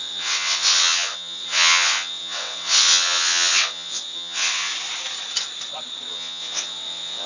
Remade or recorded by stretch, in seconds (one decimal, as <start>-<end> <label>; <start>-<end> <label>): 0.0-4.7 remade; 4.7-6.1 recorded; 6.1-7.3 remade